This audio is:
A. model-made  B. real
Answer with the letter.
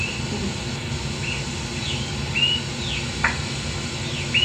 B